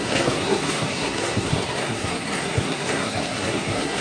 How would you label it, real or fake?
fake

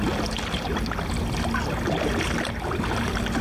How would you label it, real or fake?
real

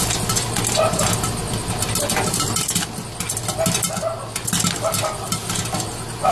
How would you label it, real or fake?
real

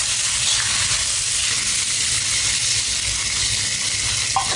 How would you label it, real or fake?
real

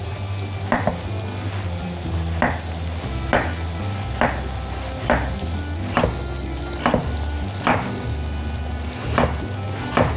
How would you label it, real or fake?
real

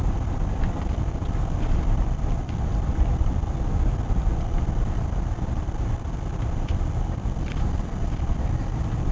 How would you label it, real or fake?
real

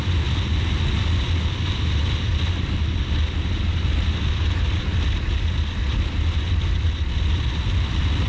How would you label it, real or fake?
real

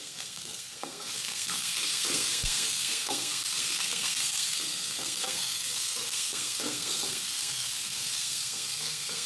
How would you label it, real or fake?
fake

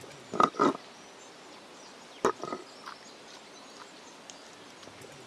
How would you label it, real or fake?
real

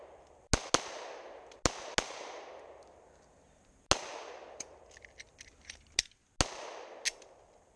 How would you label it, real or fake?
real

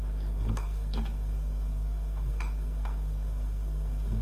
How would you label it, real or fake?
fake